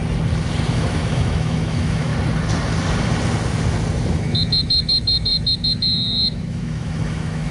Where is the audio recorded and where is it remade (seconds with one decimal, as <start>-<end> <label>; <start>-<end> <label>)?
0.0-0.7 recorded; 0.7-2.1 remade; 2.1-4.1 recorded; 4.1-7.5 remade